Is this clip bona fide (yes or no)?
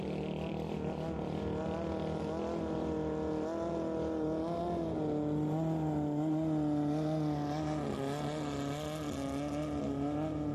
yes